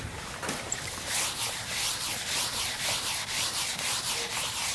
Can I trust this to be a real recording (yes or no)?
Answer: no